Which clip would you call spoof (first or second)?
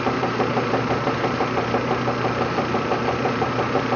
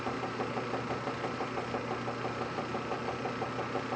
first